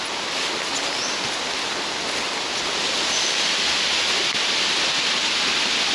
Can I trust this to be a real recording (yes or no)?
yes